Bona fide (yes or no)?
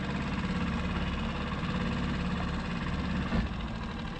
yes